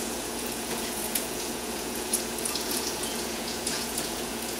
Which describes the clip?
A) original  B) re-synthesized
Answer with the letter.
B